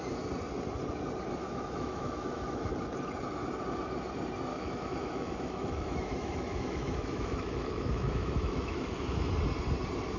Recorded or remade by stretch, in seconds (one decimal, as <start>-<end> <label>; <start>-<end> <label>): 0.0-1.4 recorded; 1.4-2.7 remade; 2.7-4.5 recorded; 4.5-9.3 remade; 9.3-10.2 recorded